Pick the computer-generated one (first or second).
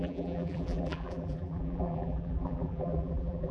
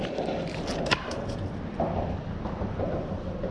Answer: first